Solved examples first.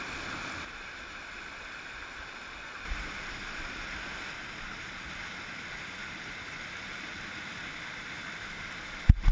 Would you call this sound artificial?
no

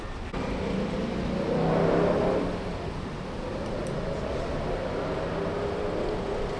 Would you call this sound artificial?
no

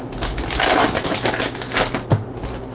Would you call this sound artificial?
no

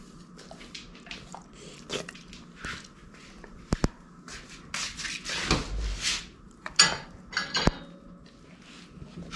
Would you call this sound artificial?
no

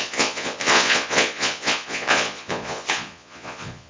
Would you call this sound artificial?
yes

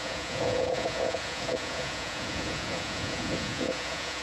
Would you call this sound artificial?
yes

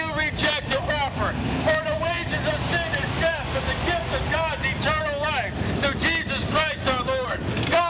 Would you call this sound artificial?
no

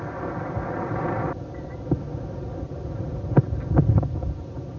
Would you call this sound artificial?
no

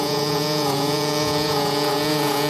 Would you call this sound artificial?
yes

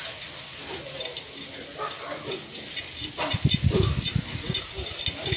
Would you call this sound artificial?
no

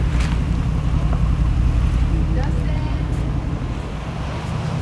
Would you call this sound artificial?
no